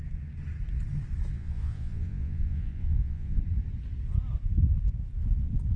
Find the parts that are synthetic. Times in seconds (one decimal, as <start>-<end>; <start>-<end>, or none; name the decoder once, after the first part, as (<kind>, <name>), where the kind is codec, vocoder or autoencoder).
1.3-3.4 (vocoder, Vocos)